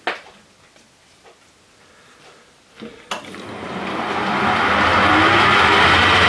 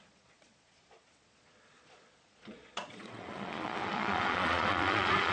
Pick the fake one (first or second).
second